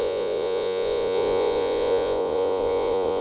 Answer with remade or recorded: remade